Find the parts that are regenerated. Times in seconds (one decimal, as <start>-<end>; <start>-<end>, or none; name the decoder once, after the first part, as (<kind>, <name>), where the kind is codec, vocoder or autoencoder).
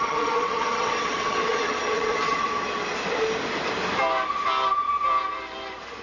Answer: 0.0-2.5 (vocoder, WaveNeXt)